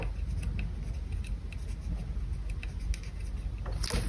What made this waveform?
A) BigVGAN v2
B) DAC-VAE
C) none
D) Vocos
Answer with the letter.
C